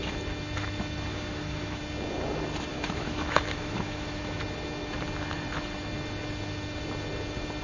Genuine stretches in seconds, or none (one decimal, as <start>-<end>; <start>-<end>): 0.0-1.1; 1.8-2.7; 4.4-7.6